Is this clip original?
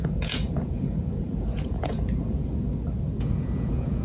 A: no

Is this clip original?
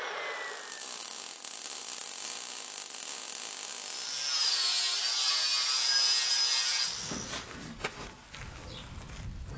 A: yes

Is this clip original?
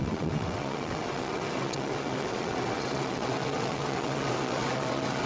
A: no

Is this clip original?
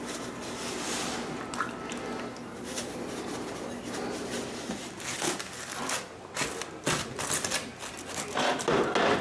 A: yes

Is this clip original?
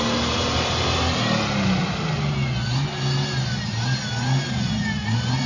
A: yes